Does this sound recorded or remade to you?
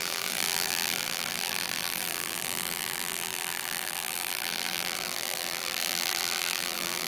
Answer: remade